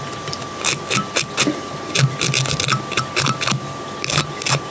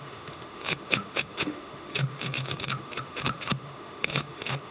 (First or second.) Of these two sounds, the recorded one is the first